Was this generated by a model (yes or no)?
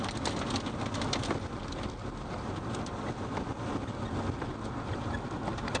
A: no